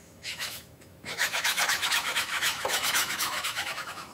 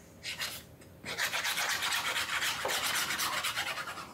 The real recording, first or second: second